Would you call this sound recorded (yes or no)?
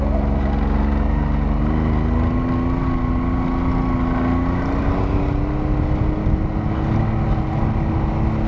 yes